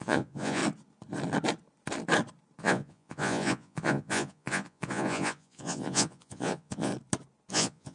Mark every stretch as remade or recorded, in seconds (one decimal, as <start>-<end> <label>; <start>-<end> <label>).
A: 0.0-0.6 remade; 0.6-2.6 recorded; 2.6-6.9 remade; 6.9-7.5 recorded; 7.5-7.9 remade